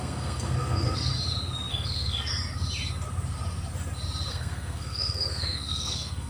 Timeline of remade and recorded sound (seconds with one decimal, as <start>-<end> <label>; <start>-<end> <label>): 0.0-1.1 remade; 1.1-1.7 recorded; 1.7-2.3 remade; 2.3-4.3 recorded; 4.3-6.3 remade